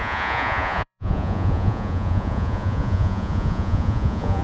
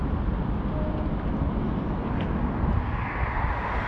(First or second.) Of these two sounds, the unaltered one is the second